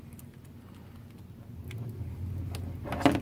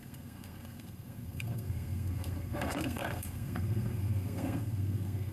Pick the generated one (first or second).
second